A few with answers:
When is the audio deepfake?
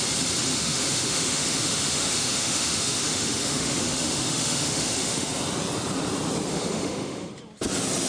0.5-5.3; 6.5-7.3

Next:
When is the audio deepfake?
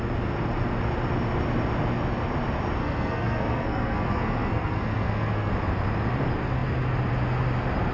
2.8-5.5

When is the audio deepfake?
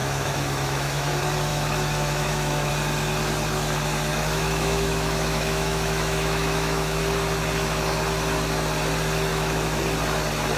0.0-1.1; 1.5-2.7; 4.1-7.0; 9.3-9.8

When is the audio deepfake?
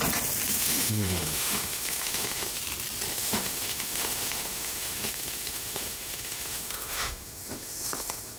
0.5-2.6; 3.1-8.4